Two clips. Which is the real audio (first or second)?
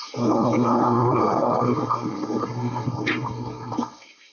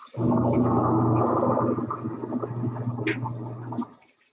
second